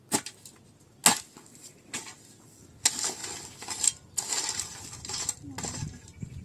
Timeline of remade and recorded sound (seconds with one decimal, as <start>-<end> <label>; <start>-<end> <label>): 0.0-6.4 recorded